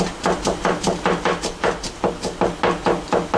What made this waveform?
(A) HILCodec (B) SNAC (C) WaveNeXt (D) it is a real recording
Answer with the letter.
D